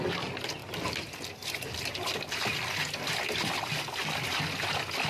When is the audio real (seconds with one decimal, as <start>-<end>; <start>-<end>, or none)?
0.0-5.1